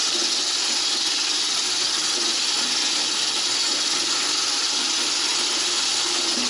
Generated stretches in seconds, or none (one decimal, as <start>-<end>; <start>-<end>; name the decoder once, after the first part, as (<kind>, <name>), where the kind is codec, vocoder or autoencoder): none